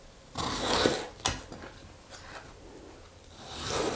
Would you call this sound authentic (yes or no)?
yes